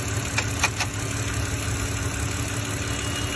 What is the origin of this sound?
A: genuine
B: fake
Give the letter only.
A